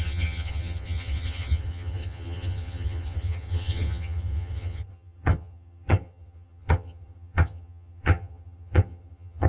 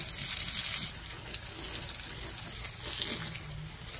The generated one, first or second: first